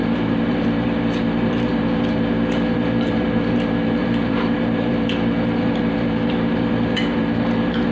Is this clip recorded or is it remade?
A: remade